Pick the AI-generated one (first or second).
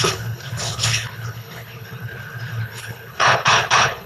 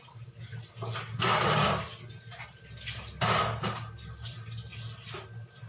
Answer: first